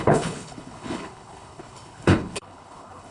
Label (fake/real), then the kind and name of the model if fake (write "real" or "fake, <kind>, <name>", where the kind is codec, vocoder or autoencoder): fake, codec, HILCodec